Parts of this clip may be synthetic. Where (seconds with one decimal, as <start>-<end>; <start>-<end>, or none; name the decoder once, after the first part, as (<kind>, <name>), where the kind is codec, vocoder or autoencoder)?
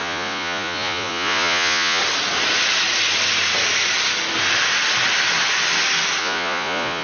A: 0.0-2.0 (vocoder, Vocos); 6.2-7.0